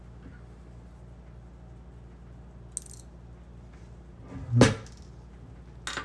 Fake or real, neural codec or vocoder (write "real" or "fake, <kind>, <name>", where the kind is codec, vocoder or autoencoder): real